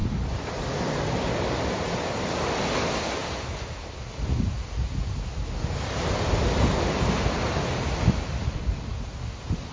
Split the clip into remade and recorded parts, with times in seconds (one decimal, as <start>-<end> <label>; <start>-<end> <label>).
0.0-9.7 recorded